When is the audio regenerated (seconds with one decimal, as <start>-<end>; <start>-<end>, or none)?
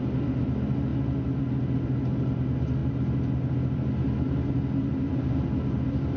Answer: none